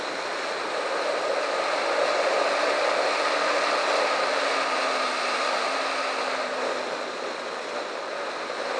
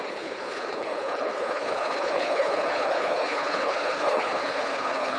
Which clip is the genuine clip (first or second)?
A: first